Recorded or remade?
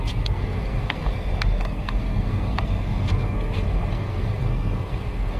remade